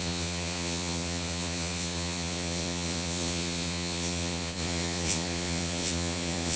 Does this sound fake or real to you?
fake